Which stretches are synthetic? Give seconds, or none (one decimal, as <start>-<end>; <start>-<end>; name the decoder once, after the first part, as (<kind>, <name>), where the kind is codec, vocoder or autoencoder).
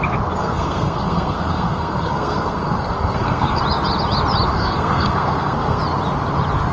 0.4-3.6 (codec, SNAC); 4.5-5.8